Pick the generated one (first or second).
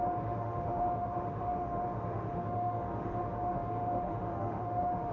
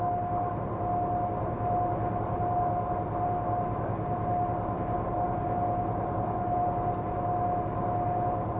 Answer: first